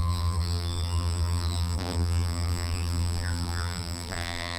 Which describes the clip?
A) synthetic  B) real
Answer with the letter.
A